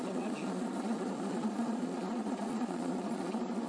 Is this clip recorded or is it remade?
remade